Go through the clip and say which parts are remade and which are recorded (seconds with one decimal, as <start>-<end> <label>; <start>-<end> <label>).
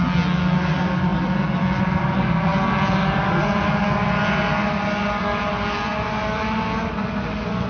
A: 0.0-7.7 recorded